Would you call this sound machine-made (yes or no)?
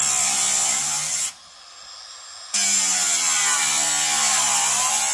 no